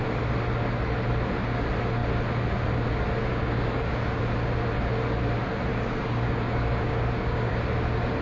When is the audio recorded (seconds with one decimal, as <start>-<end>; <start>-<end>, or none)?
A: 0.0-3.3; 4.2-5.7; 7.5-8.2